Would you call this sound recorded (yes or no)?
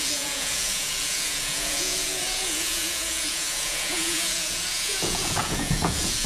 no